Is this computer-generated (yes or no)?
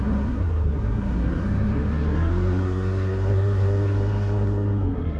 yes